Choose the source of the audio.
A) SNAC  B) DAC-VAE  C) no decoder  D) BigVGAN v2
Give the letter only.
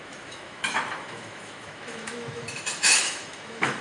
B